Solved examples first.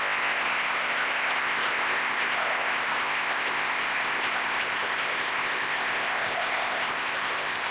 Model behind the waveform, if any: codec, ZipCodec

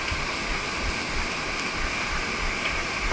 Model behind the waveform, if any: none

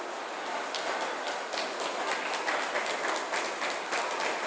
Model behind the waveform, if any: none